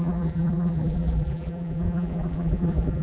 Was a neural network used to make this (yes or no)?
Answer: yes